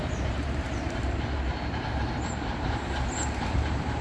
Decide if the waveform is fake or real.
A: fake